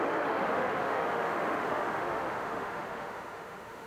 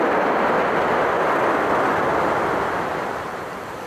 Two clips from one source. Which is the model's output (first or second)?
first